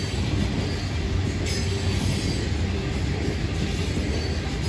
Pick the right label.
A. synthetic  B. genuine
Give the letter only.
B